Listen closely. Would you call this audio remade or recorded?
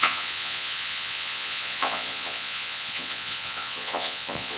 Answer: remade